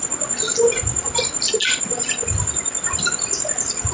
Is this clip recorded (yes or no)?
yes